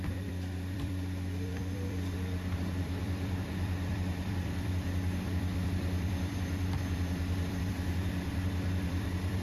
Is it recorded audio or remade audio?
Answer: remade